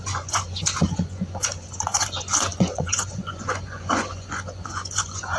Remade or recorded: remade